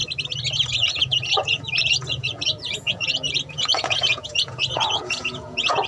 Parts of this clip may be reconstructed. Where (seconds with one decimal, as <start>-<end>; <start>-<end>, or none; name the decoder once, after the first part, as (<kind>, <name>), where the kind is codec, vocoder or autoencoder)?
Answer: 0.7-5.9 (vocoder, Vocos)